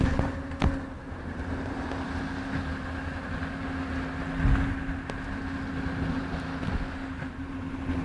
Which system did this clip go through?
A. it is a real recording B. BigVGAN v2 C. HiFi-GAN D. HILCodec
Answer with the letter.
A